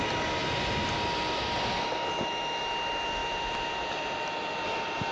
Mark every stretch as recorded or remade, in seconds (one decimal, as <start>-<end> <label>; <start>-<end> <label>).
0.0-5.1 recorded